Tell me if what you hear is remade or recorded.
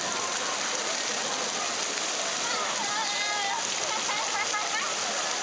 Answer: recorded